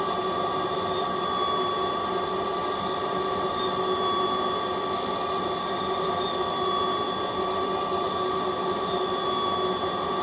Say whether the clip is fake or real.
real